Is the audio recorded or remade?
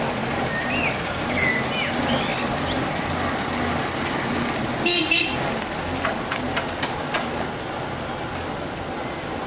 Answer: recorded